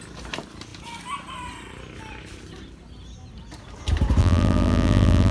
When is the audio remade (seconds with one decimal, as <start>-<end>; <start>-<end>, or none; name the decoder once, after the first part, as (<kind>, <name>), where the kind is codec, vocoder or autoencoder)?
4.2-5.3 (vocoder, BigVGAN v2)